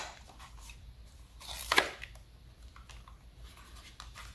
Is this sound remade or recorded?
recorded